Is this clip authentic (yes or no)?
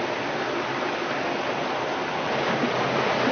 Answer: yes